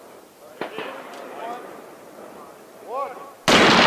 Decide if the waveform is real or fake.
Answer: real